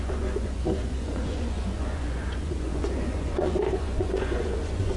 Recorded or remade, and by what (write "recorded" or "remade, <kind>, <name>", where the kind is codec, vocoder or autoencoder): remade, vocoder, Vocos